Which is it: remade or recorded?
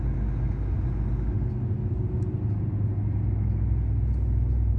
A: recorded